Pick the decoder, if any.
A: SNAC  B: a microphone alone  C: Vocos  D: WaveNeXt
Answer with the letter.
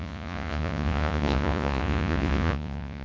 C